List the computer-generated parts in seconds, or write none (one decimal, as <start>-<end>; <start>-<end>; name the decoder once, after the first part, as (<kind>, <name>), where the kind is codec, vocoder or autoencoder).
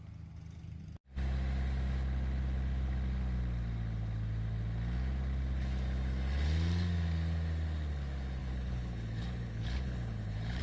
8.4-10.6 (codec, HILCodec)